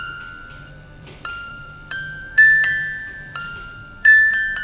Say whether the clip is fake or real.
fake